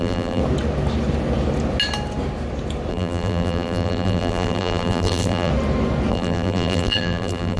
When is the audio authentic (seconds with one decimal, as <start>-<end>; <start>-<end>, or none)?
0.4-2.9; 5.5-6.1